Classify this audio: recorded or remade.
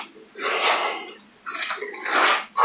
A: recorded